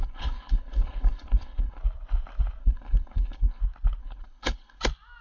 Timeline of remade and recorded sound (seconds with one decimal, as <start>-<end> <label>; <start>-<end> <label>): 0.0-1.8 remade; 1.8-2.6 recorded; 2.6-3.6 remade; 3.6-4.0 recorded; 4.0-4.8 remade; 4.8-5.2 recorded